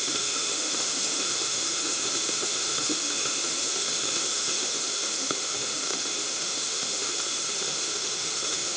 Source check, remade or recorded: remade